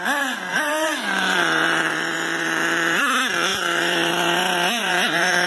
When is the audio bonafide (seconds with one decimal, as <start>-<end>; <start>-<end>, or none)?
0.0-0.5; 3.0-3.5; 4.1-4.8

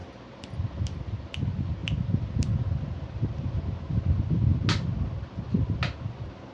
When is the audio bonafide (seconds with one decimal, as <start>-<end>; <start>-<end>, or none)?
0.0-6.5

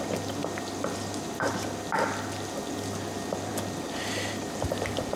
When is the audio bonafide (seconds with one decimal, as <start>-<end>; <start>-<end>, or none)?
0.0-5.2

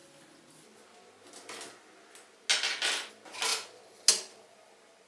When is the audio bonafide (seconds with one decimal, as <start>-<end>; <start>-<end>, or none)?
0.0-5.1

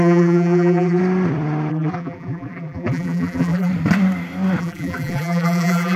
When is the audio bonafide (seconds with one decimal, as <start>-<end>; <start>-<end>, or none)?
1.0-1.7; 3.7-4.6

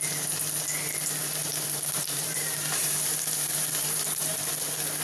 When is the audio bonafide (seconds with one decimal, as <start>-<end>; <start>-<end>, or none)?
0.0-1.5; 4.5-5.0